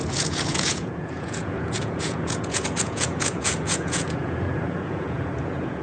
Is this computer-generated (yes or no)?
yes